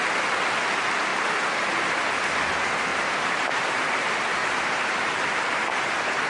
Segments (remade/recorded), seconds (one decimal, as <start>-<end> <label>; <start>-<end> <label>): 0.0-1.1 recorded; 1.1-2.2 remade; 2.2-2.9 recorded; 2.9-3.7 remade; 3.7-4.4 recorded; 4.4-6.3 remade